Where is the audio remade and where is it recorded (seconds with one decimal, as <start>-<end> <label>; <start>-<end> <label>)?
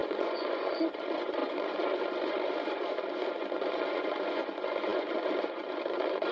0.0-6.3 remade